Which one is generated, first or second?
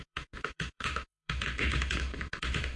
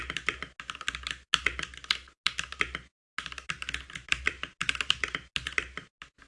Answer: first